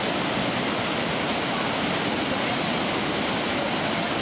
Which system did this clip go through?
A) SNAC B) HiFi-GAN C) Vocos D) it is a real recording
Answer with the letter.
D